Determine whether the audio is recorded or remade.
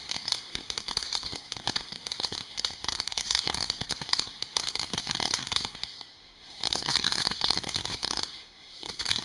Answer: remade